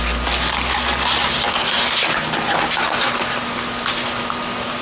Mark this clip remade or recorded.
recorded